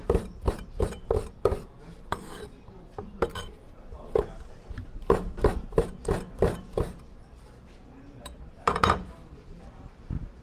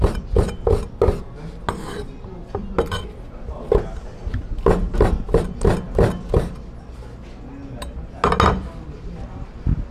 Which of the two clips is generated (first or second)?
first